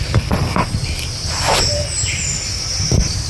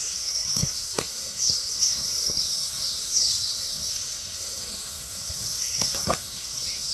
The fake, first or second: second